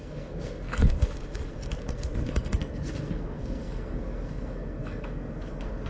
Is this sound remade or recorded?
remade